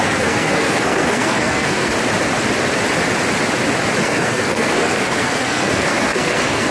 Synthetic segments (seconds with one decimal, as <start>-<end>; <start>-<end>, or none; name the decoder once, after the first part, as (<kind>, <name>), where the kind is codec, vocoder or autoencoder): 0.0-1.9 (codec, SNAC); 4.0-6.7